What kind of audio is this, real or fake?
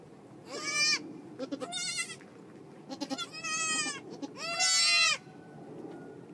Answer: real